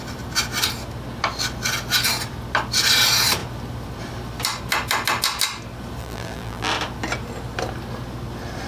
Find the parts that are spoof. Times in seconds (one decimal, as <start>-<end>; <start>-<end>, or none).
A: 6.0-6.7